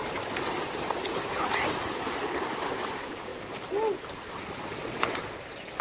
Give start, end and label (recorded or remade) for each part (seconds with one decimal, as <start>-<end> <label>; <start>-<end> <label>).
0.0-4.8 recorded; 4.8-5.3 remade; 5.3-5.8 recorded